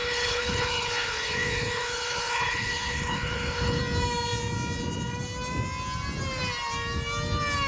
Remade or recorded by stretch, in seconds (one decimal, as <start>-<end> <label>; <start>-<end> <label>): 0.0-3.8 remade; 3.8-7.7 recorded